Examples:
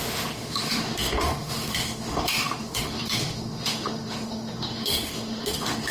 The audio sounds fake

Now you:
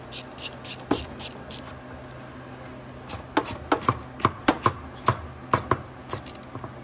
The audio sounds real